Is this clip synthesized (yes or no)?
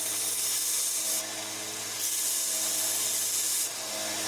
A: no